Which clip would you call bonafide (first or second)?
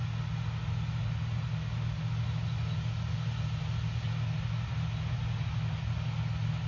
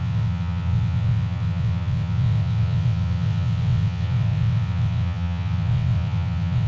first